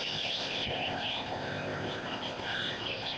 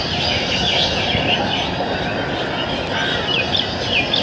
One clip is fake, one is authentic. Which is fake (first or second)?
first